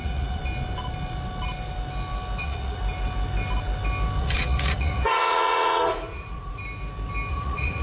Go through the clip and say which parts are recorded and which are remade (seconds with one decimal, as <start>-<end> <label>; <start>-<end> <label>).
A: 0.0-0.4 remade; 0.4-2.4 recorded; 2.4-2.8 remade; 2.8-4.2 recorded; 4.2-6.6 remade; 6.6-7.3 recorded; 7.3-7.8 remade